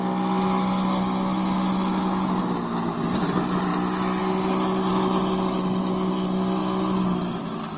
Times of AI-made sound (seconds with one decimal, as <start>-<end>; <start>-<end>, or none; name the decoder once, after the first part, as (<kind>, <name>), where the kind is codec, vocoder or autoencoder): none